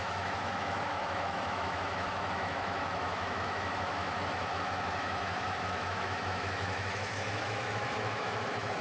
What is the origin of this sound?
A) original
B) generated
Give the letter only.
B